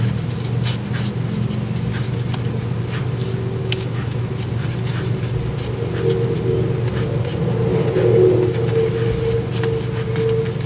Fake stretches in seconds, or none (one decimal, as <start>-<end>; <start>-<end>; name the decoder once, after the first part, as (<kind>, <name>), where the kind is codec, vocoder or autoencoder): 3.6-4.3 (autoencoder, DAC-VAE)